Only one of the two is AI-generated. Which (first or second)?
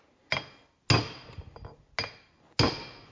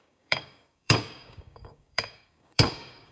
second